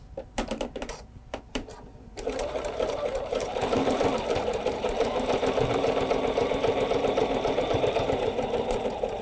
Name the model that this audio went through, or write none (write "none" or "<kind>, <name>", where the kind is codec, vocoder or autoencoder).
vocoder, BigVGAN v2